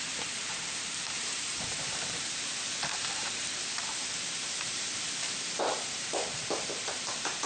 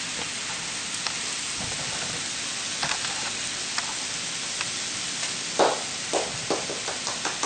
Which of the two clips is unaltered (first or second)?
second